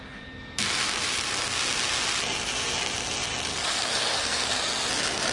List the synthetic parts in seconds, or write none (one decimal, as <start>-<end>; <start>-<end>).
3.5-4.6